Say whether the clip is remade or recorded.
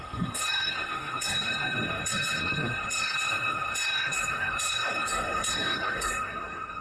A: remade